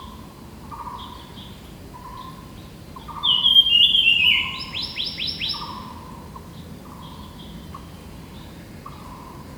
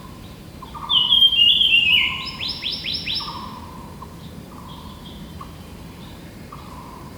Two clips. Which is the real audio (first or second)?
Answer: first